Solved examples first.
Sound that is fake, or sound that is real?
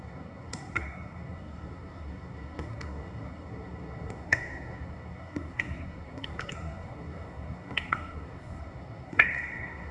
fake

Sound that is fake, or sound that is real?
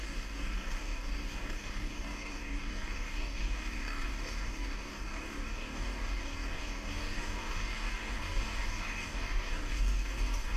fake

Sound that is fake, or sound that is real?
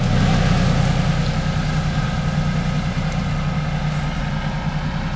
real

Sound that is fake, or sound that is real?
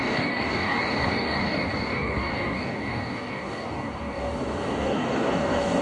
fake